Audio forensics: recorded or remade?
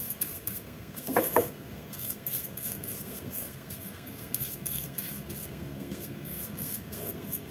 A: remade